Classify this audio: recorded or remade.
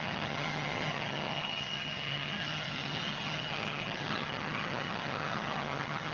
remade